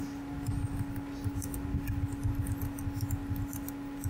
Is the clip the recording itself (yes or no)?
yes